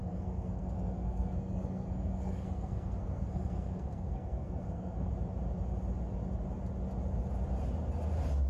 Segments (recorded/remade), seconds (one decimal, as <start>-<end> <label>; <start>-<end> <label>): 0.0-5.1 remade; 5.1-8.5 recorded